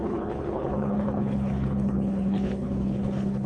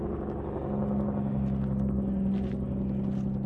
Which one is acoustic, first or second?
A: second